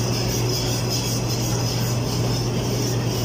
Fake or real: real